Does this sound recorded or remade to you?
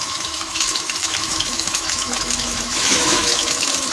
remade